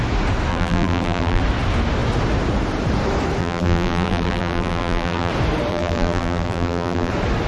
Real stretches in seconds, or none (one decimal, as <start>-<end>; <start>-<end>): 0.0-0.5; 1.4-3.4; 5.3-5.7; 7.1-7.5